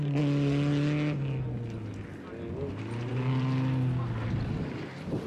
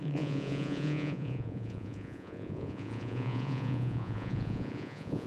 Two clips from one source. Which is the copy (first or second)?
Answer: second